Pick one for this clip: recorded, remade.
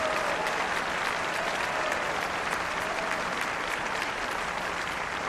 remade